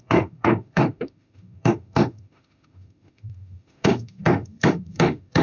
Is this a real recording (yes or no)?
no